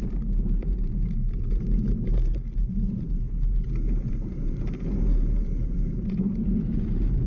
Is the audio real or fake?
fake